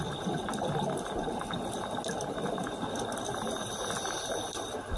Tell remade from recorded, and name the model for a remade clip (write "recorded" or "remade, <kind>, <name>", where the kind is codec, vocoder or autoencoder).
recorded